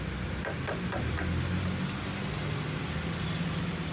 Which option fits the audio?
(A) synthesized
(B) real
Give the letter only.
B